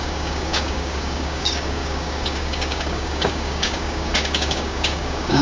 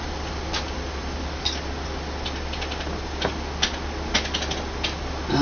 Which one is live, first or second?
second